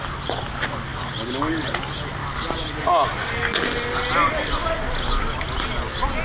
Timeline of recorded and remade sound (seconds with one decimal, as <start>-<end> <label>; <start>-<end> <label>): 0.0-6.2 recorded